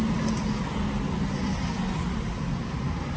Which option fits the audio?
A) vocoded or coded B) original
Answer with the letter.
B